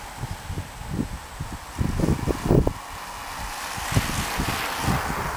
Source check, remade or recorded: recorded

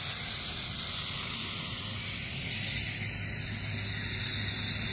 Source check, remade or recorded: recorded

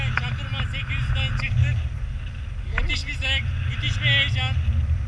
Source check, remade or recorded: recorded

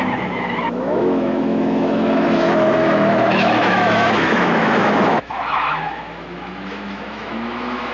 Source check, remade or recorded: remade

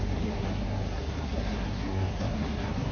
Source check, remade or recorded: remade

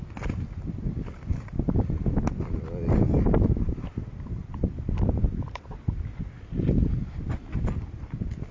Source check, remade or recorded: recorded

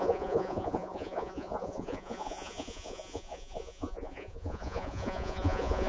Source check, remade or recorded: remade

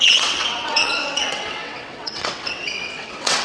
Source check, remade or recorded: remade